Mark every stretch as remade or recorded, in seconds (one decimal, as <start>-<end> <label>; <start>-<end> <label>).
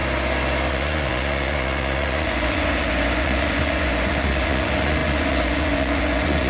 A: 0.0-0.7 recorded; 0.7-6.5 remade